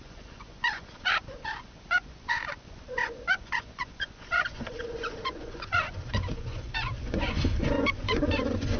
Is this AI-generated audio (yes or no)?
yes